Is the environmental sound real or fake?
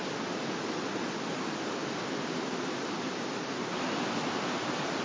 real